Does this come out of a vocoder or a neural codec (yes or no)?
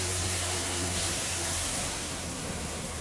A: yes